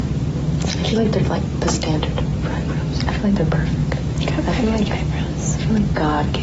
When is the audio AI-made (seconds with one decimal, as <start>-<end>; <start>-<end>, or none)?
3.8-5.2